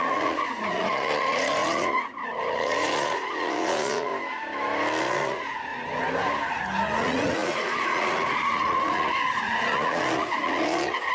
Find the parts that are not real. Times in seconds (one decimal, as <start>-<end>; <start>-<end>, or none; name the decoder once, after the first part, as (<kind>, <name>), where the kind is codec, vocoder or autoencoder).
0.0-4.1 (vocoder, Vocos); 5.0-5.7; 7.0-11.1